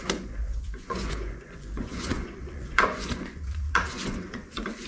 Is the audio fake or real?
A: fake